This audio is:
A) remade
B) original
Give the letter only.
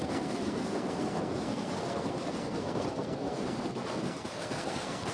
A